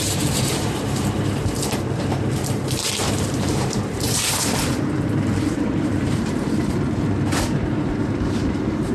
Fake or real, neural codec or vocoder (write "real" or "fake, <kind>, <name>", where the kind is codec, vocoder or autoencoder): fake, vocoder, BigVGAN v2